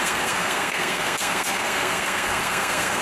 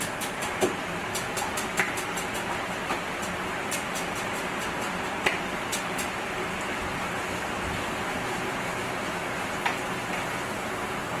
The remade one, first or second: first